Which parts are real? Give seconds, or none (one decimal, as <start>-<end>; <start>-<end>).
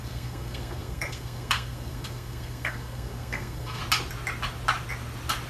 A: 3.8-5.5